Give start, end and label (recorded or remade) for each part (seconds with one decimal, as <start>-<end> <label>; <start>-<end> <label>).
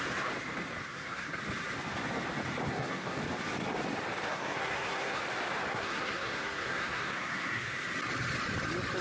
0.0-0.9 recorded; 0.9-1.4 remade; 1.4-2.7 recorded; 2.7-3.2 remade; 3.2-4.3 recorded; 4.3-5.2 remade; 5.2-5.7 recorded; 5.7-7.7 remade; 7.7-9.0 recorded